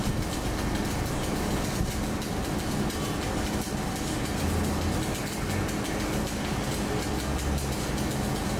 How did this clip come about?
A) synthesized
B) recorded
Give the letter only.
B